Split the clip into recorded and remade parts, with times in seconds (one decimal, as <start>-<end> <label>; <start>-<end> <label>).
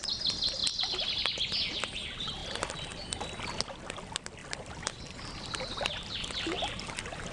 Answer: 0.0-4.4 recorded; 4.4-5.0 remade; 5.0-7.3 recorded